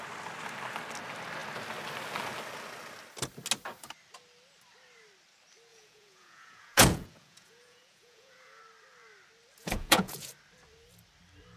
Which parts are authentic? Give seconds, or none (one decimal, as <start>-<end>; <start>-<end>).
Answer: 0.0-5.7; 8.6-9.6; 10.3-11.6